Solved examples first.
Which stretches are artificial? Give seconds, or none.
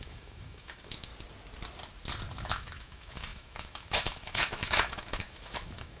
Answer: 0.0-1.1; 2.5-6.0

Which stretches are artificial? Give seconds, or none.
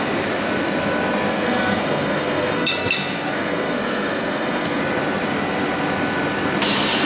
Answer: 1.3-4.8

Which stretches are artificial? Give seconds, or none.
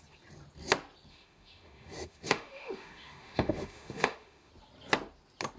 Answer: 1.1-4.5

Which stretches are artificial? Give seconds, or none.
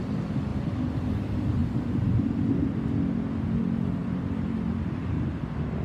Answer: 0.5-1.1; 4.0-5.2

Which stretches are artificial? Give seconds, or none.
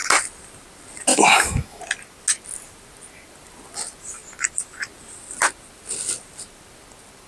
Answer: 1.1-1.8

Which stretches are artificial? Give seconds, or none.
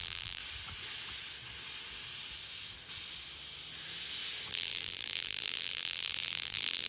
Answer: 0.0-0.4; 4.5-6.9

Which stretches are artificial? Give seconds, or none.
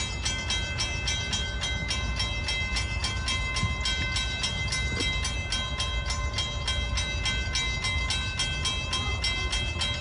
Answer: none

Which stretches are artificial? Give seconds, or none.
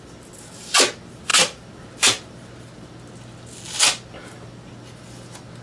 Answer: none